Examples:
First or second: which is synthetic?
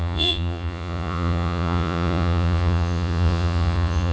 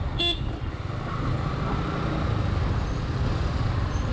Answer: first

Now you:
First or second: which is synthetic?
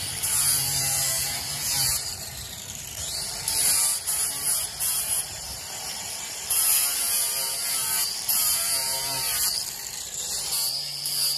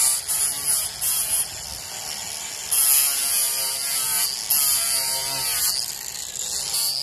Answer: first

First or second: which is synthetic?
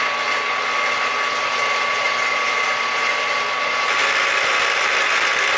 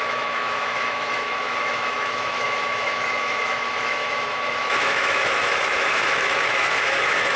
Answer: second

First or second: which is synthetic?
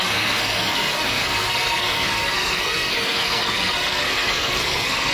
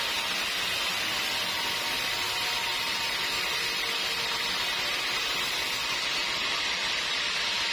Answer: first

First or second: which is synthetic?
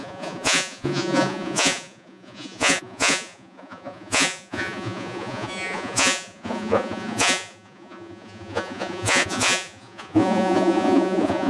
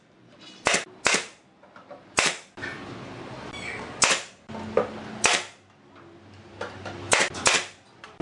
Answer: first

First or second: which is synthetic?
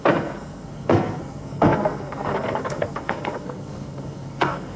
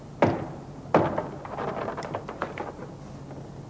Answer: first